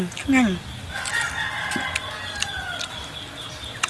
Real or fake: real